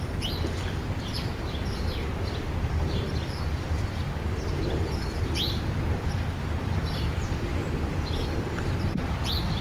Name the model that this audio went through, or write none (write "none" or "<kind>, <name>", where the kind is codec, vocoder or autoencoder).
vocoder, BigVGAN v2